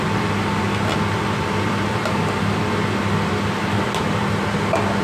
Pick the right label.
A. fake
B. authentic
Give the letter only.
B